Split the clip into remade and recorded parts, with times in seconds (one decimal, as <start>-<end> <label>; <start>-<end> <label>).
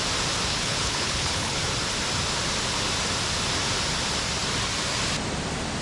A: 0.0-0.5 recorded; 0.5-1.6 remade; 1.6-5.8 recorded